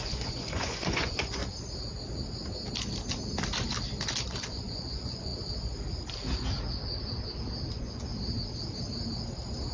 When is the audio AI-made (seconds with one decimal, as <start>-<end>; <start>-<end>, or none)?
0.0-1.4; 4.5-5.3; 7.7-8.1